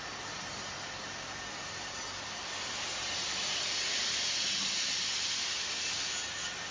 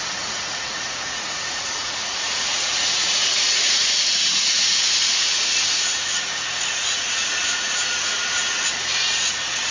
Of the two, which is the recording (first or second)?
first